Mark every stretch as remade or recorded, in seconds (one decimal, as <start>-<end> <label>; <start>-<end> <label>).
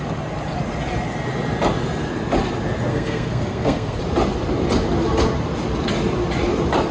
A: 0.0-2.9 recorded; 2.9-4.0 remade; 4.0-6.9 recorded